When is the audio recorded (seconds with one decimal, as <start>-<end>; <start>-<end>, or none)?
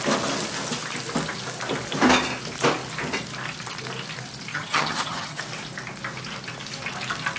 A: 0.0-4.5; 5.4-7.4